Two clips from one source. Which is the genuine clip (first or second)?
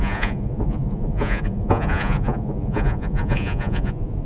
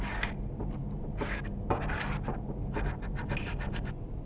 second